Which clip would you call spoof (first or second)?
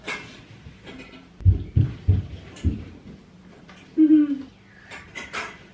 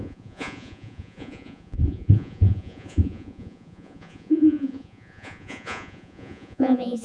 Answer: second